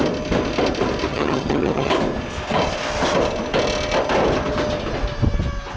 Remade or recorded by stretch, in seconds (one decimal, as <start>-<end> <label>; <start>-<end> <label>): 0.0-1.1 recorded; 1.1-1.9 remade; 1.9-5.8 recorded